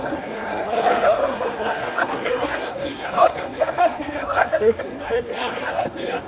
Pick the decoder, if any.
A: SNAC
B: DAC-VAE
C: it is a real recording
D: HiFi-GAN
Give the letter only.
A